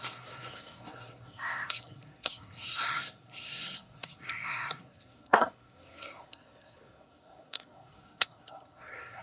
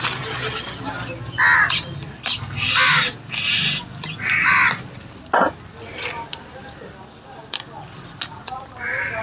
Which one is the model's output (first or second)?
first